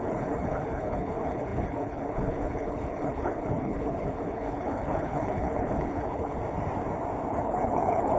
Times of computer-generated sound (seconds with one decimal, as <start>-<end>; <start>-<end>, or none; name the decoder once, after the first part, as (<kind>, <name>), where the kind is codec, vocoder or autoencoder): 0.0-6.4 (codec, HILCodec); 7.3-8.2